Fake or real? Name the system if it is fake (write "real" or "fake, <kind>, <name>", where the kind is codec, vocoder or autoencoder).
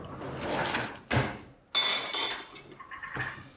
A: real